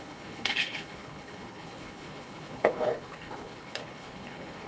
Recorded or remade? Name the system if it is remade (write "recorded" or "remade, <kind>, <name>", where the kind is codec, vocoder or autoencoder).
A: remade, codec, HILCodec